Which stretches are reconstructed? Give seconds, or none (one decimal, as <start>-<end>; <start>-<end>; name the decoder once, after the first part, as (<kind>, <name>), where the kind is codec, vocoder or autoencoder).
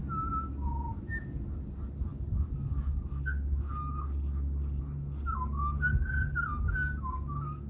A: none